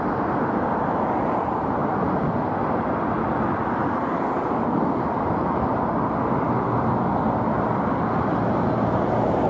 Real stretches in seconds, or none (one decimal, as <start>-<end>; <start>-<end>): 0.0-9.5